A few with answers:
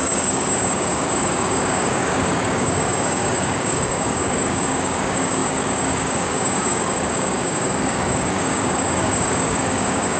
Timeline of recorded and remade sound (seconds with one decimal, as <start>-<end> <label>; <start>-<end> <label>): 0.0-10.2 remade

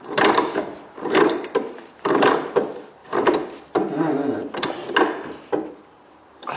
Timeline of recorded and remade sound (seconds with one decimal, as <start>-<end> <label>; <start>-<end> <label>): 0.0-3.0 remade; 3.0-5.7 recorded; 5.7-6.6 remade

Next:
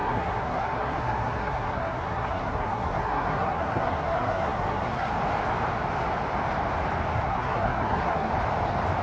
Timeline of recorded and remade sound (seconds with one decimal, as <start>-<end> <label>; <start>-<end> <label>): 0.0-5.1 remade; 5.1-7.1 recorded; 7.1-8.3 remade; 8.3-9.0 recorded

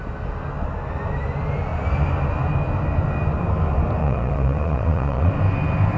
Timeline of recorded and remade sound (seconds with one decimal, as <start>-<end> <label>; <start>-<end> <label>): 0.0-4.0 recorded; 4.0-5.3 remade; 5.3-6.0 recorded